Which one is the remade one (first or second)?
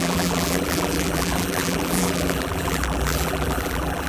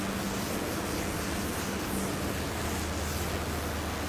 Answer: first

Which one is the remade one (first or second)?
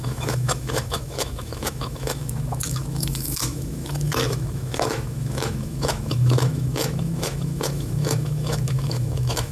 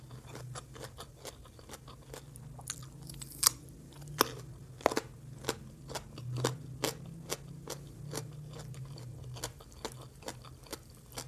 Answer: first